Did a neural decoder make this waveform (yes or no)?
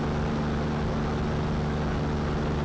no